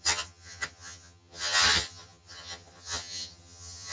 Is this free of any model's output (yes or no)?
no